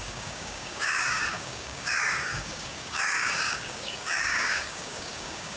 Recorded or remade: remade